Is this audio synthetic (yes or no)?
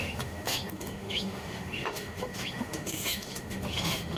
yes